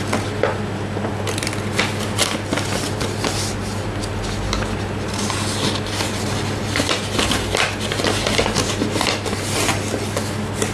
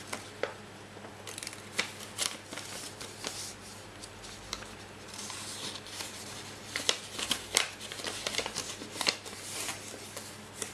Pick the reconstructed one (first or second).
second